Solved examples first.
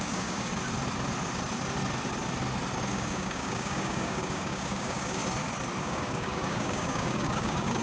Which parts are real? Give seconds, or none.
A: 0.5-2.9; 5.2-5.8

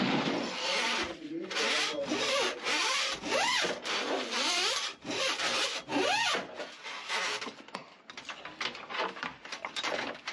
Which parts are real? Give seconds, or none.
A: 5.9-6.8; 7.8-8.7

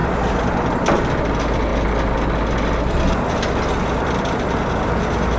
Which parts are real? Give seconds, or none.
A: 1.7-4.0